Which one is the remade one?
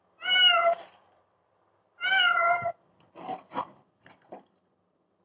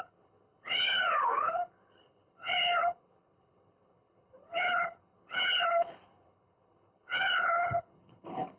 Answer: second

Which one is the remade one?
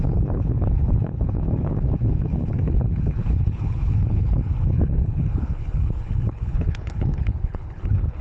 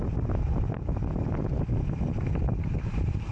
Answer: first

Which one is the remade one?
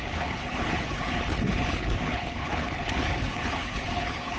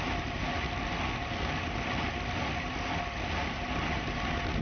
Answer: first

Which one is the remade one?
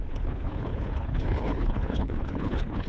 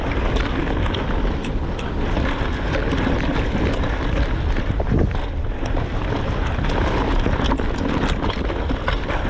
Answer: first